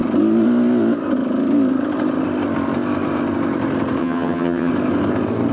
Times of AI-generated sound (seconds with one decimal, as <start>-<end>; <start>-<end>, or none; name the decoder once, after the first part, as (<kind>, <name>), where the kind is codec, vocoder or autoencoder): 4.0-4.7 (vocoder, HiFi-GAN)